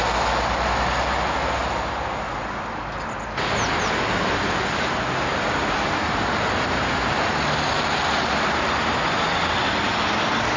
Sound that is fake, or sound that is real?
real